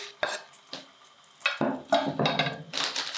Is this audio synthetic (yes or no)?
no